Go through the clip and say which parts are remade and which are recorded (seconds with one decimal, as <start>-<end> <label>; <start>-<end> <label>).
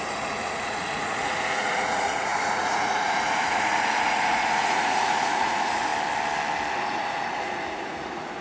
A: 0.0-5.9 remade; 5.9-6.7 recorded; 6.7-8.4 remade